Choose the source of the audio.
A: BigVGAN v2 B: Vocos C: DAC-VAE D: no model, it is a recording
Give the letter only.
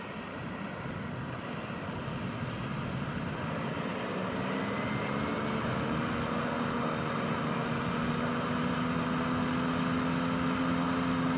D